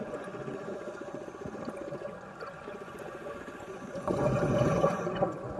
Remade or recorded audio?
remade